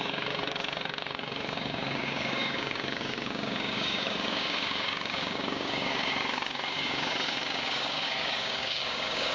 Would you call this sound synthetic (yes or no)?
yes